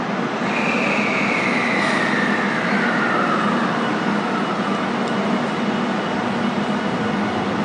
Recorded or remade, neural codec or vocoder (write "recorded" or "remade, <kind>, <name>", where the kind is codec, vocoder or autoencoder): recorded